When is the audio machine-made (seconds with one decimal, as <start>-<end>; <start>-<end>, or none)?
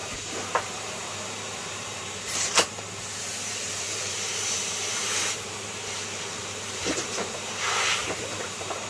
0.0-8.9